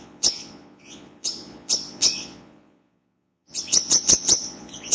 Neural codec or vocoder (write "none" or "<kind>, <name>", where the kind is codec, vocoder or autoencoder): vocoder, Vocos